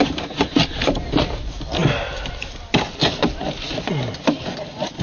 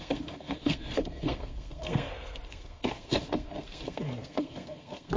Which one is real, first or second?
first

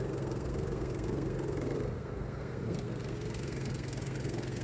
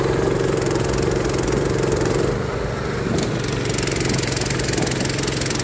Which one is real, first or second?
second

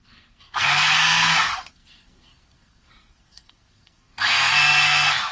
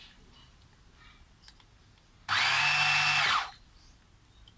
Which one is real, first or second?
second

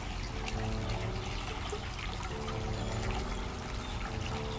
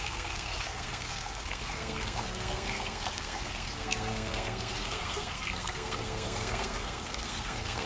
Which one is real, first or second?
first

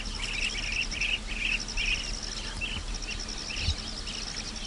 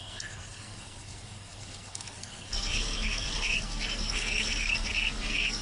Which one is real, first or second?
first